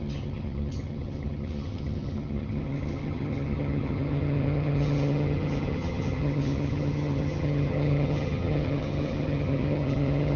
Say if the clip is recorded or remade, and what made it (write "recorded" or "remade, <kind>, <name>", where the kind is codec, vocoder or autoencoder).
remade, vocoder, HiFi-GAN